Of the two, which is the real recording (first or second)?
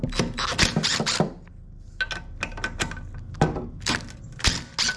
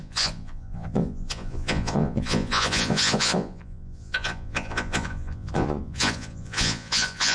first